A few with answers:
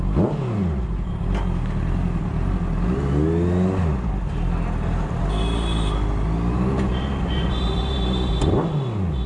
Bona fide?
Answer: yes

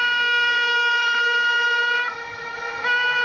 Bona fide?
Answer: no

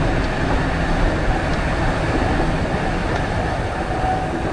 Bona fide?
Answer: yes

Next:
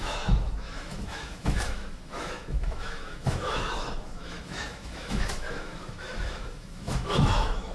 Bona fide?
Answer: no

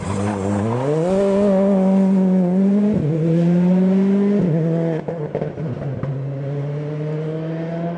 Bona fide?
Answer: yes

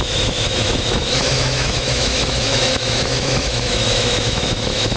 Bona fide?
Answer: no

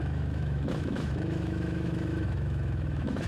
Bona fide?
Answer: no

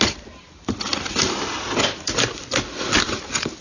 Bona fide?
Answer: yes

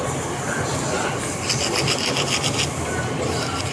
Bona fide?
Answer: yes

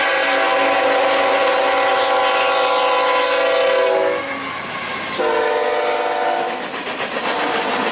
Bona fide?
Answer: yes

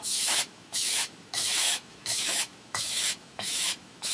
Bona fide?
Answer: no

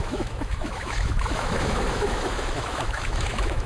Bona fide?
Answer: no